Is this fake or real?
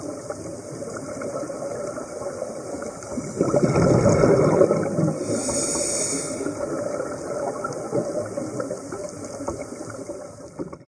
real